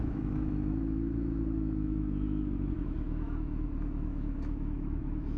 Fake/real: fake